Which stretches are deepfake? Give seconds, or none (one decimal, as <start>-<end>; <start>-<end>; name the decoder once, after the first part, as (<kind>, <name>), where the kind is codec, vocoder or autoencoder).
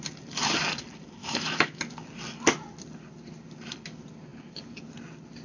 1.2-1.8 (autoencoder, DAC-VAE)